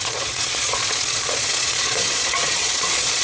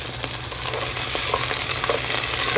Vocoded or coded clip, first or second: first